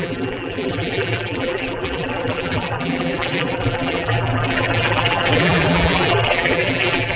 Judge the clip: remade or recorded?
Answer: remade